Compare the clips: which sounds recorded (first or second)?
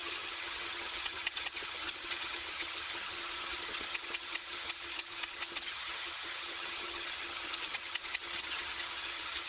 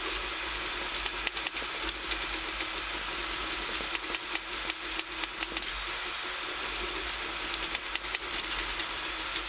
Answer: second